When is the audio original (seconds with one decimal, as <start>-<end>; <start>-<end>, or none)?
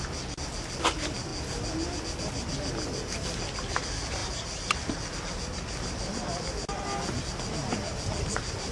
0.0-8.7